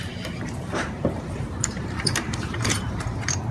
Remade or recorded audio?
remade